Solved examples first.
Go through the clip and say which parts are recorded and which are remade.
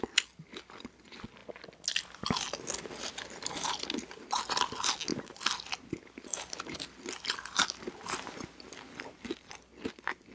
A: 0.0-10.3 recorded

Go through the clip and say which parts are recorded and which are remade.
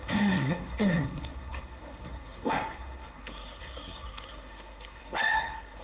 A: 0.0-5.8 remade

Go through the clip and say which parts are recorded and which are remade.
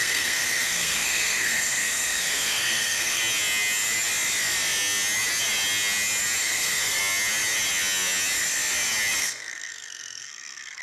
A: 0.0-3.2 remade; 3.2-6.4 recorded; 6.4-7.0 remade; 7.0-9.2 recorded; 9.2-10.8 remade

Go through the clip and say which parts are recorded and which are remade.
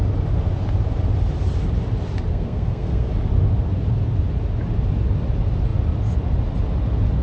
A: 0.0-2.3 recorded; 2.3-3.1 remade; 3.1-7.2 recorded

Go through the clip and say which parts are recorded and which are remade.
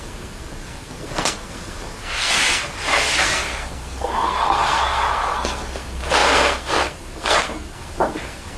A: 0.0-8.6 remade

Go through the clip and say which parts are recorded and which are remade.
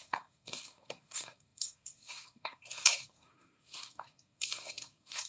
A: 0.0-5.3 remade